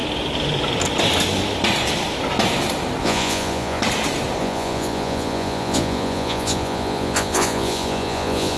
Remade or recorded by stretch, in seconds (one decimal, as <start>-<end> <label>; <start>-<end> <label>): 0.0-3.0 recorded; 3.0-3.8 remade; 3.8-4.4 recorded; 4.4-8.6 remade

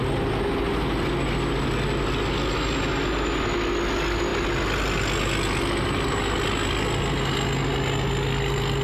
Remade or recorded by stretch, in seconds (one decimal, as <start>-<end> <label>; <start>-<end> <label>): 0.0-8.8 recorded

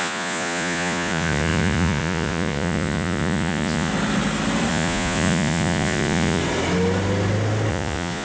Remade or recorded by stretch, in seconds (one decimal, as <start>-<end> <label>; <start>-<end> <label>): 0.0-3.9 remade; 3.9-4.7 recorded; 4.7-6.4 remade; 6.4-7.7 recorded; 7.7-8.2 remade

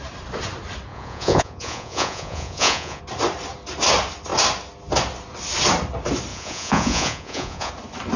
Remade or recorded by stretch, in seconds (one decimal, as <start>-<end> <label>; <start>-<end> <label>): 0.0-0.9 recorded; 0.9-3.0 remade; 3.0-6.3 recorded; 6.3-7.7 remade; 7.7-8.2 recorded